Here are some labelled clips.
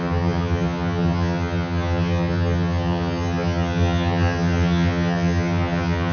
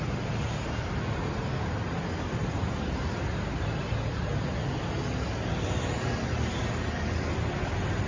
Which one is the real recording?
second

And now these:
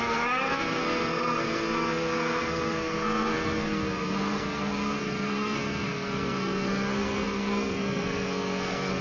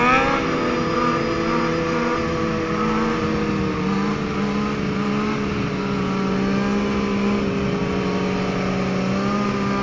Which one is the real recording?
second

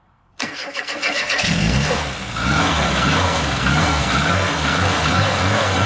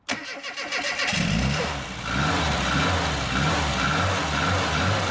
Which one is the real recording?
second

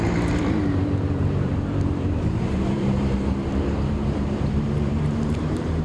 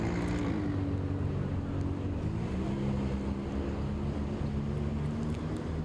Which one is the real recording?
second